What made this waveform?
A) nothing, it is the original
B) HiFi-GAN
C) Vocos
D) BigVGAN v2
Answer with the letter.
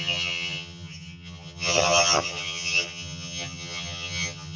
B